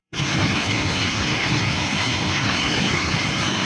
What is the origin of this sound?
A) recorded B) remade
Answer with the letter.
B